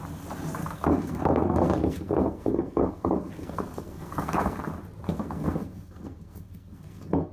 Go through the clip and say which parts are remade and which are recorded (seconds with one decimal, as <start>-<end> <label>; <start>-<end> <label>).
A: 0.0-0.6 recorded; 0.6-4.6 remade; 4.6-5.0 recorded; 5.0-7.3 remade